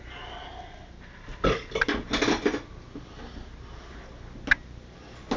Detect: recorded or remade recorded